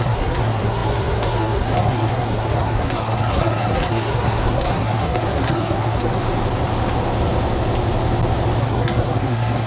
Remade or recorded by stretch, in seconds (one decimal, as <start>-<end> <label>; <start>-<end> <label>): 0.0-6.1 remade; 6.1-8.6 recorded; 8.6-9.7 remade